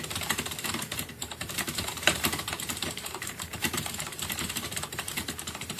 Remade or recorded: remade